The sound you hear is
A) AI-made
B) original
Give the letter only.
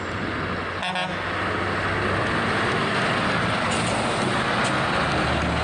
B